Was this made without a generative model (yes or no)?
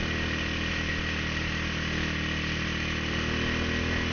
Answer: yes